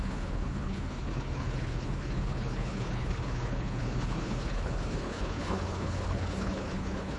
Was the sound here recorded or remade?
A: remade